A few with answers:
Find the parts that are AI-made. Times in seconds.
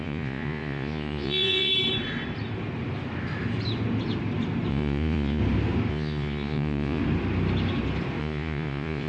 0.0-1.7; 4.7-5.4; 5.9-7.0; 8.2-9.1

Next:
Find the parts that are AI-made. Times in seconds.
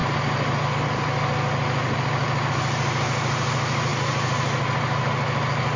none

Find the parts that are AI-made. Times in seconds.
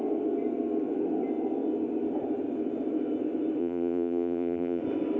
3.6-4.8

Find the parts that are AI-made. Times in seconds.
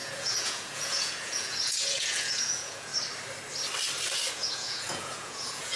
0.0-2.9; 4.3-5.8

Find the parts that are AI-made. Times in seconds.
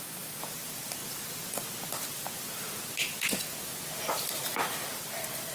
0.0-1.0; 4.1-5.5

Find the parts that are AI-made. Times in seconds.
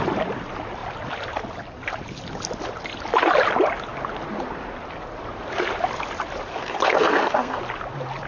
6.5-7.6